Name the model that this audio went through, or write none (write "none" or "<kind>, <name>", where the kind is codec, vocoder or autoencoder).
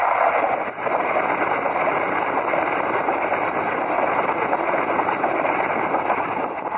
none